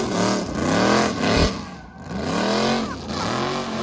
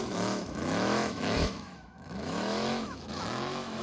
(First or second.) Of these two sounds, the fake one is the second